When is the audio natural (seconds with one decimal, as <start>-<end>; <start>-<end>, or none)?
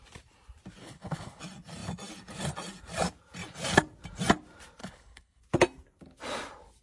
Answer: 0.0-0.8; 1.4-4.8; 5.4-6.8